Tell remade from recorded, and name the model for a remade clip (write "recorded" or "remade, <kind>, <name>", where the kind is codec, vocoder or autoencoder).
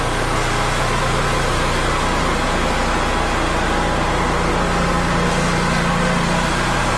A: recorded